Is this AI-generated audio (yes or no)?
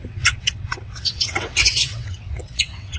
yes